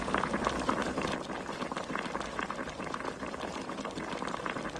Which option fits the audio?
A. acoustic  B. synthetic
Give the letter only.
A